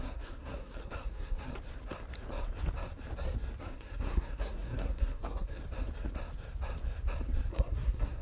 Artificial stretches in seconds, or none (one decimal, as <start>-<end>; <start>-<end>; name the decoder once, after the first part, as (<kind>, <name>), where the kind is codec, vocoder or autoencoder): 0.0-1.5 (codec, SNAC); 3.6-5.6; 7.5-8.2

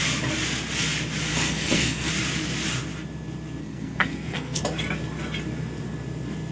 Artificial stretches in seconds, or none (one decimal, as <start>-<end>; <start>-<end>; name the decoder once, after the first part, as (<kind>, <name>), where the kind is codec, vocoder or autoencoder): 1.3-2.1 (codec, SNAC); 3.6-4.6

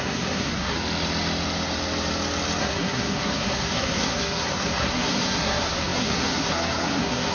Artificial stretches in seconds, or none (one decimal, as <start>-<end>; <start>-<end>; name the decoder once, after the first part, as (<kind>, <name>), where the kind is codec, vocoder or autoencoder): 0.0-0.8 (codec, SNAC); 2.6-7.3

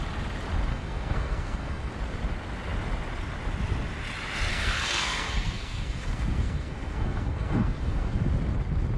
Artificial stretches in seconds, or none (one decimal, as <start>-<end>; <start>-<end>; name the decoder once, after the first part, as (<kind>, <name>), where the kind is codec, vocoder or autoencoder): 0.7-1.9 (codec, SNAC); 4.5-8.3

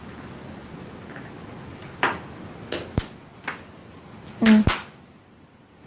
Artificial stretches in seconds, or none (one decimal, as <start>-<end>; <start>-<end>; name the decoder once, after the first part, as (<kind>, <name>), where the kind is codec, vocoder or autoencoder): none

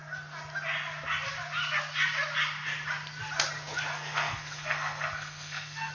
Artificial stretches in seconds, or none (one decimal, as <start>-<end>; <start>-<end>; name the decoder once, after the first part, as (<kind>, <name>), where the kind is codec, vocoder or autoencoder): 3.9-5.9 (codec, SNAC)

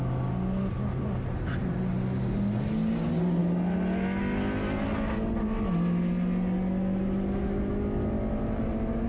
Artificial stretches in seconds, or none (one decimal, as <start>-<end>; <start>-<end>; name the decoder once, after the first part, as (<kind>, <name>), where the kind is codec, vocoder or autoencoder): none

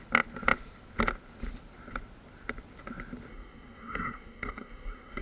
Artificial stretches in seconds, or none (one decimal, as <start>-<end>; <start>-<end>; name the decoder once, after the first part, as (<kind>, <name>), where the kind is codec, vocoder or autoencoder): 3.3-5.2 (codec, SNAC)